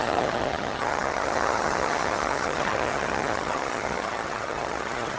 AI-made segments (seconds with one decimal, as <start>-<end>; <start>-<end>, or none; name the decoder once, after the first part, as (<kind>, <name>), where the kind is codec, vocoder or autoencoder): 0.0-5.2 (vocoder, HiFi-GAN)